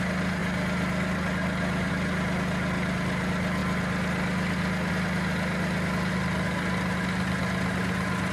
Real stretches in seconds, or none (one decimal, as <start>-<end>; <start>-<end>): 0.0-8.3